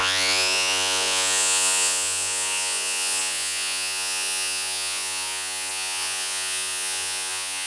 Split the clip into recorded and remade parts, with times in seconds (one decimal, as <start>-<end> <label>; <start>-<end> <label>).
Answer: 0.0-7.7 remade